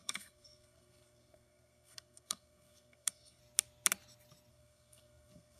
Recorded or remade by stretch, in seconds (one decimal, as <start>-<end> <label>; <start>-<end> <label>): 0.0-3.4 remade; 3.4-4.5 recorded; 4.5-5.6 remade